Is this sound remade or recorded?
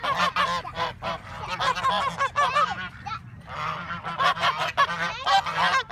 recorded